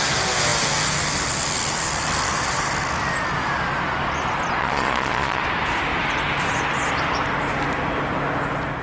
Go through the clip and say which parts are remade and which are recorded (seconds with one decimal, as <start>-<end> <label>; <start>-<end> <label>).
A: 0.0-4.6 recorded; 4.6-5.4 remade; 5.4-8.8 recorded